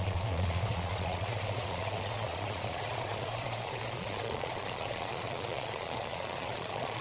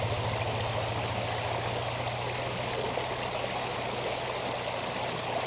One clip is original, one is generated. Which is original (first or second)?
second